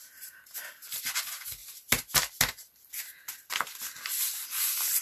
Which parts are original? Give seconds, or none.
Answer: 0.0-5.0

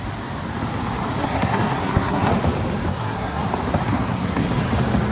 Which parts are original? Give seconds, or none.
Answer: 0.0-1.2; 2.3-2.9; 3.5-3.9; 4.6-5.1

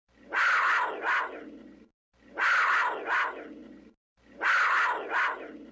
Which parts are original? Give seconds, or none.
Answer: 0.0-5.7

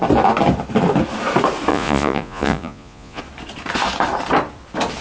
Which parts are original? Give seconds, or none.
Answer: 0.0-1.7; 3.2-5.0

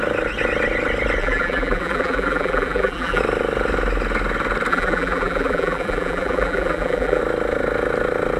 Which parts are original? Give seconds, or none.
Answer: 0.0-1.2; 3.2-4.7; 7.2-8.4

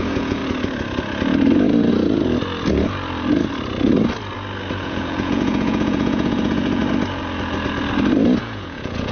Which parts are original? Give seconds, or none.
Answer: 0.4-4.8; 6.8-8.4